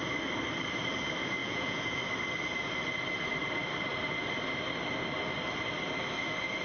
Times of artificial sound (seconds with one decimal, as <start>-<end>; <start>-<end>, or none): 1.4-2.0